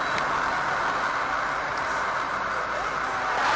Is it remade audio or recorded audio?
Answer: recorded